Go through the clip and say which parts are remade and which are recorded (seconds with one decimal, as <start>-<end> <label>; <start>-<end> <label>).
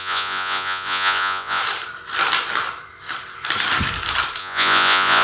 0.0-1.6 remade; 1.6-4.4 recorded; 4.4-5.2 remade